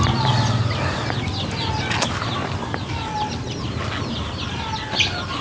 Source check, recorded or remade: recorded